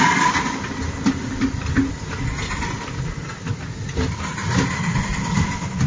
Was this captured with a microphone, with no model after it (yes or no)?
yes